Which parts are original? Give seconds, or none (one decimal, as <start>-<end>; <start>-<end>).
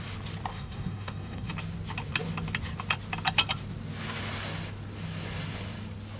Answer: 0.0-0.5; 1.5-6.2